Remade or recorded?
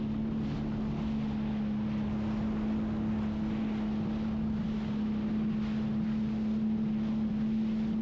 recorded